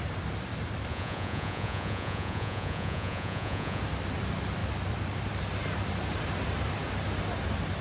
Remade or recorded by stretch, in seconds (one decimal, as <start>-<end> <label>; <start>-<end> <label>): 0.0-0.9 recorded; 0.9-3.8 remade; 3.8-7.8 recorded